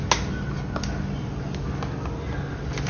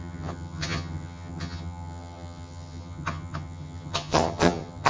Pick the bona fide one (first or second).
first